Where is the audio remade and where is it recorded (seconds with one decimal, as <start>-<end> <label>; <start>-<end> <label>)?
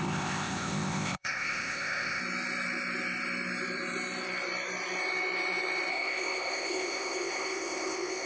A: 0.0-2.2 remade; 2.2-5.9 recorded; 5.9-8.3 remade